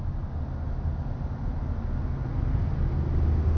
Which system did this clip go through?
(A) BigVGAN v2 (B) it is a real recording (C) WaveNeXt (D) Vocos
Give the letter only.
B